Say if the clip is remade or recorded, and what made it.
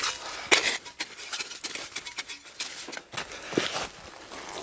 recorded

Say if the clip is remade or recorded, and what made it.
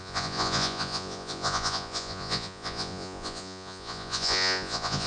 remade, vocoder, Vocos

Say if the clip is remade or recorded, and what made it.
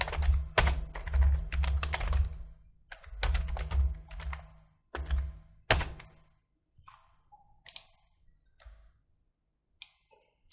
recorded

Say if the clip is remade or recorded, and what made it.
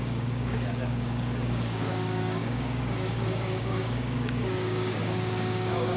remade, codec, DAC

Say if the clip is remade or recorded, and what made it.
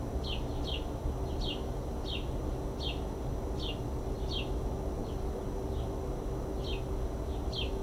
recorded